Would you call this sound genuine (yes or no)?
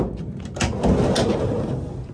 yes